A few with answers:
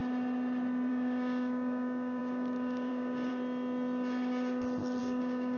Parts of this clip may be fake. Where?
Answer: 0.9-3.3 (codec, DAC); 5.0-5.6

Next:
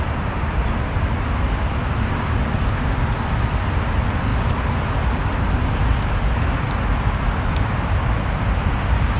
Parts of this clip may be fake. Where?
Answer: none

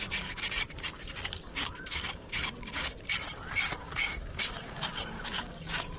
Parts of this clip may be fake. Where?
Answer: 1.5-2.9 (codec, DAC); 4.1-6.0

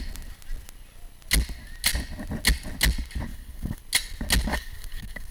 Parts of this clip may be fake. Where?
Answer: 3.3-3.8 (codec, DAC); 4.5-5.3

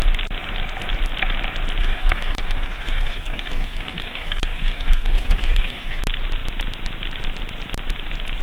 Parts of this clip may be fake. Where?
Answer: 1.8-6.0 (codec, DAC)

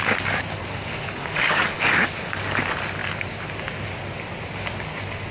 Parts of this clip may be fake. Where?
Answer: 0.5-2.4 (codec, DAC)

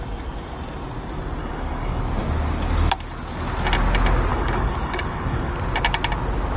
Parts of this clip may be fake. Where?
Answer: 1.4-2.0 (codec, DAC); 4.3-5.5

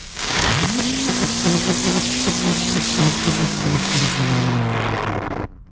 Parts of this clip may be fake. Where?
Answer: 0.0-0.5 (codec, DAC); 3.2-4.0